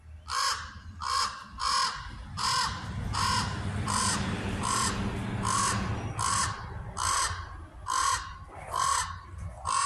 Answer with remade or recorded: recorded